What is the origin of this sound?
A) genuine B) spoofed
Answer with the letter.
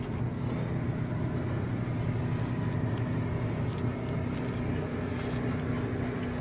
A